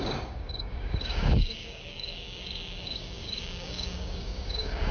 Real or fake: fake